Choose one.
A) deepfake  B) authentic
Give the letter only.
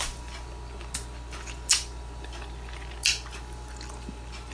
B